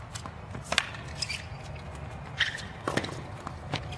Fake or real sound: real